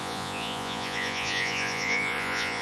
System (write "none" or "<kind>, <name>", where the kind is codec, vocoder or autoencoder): vocoder, Vocos